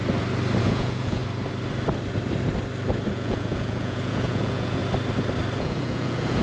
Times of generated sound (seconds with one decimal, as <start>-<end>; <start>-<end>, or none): 0.6-1.2; 3.1-4.8; 5.6-6.4